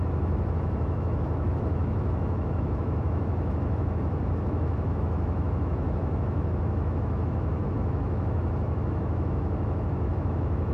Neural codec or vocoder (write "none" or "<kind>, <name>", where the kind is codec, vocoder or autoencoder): autoencoder, DAC-VAE